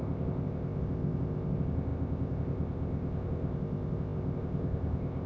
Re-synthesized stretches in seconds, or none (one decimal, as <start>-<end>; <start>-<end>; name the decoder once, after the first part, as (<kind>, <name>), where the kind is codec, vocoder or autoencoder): 0.0-5.3 (codec, ZipCodec)